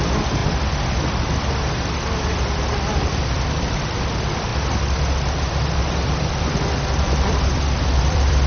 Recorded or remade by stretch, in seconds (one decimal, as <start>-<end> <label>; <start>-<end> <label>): 0.0-0.4 remade; 0.4-2.9 recorded; 2.9-4.5 remade; 4.5-5.9 recorded; 5.9-8.5 remade